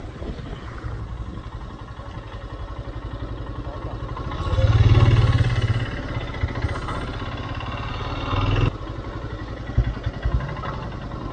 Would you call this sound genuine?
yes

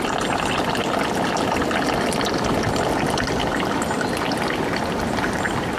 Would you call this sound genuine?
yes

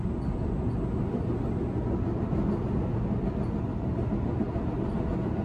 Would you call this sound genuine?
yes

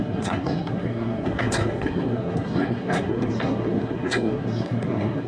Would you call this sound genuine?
no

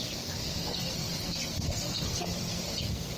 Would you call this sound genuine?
no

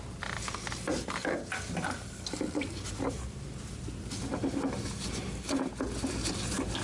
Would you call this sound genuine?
yes